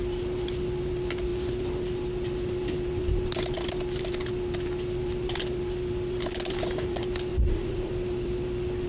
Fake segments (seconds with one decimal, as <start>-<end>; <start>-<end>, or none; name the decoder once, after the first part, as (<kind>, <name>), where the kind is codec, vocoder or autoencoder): 7.3-7.9 (vocoder, Vocos)